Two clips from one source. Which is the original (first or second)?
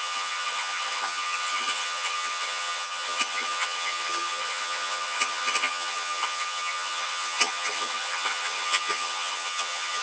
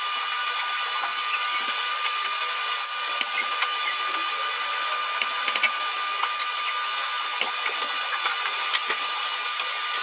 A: second